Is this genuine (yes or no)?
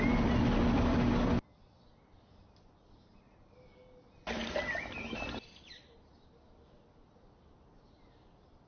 yes